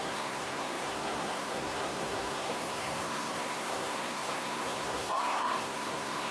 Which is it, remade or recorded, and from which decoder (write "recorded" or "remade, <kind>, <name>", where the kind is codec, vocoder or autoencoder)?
remade, codec, SNAC